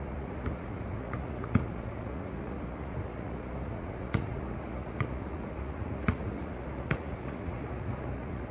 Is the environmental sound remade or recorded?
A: remade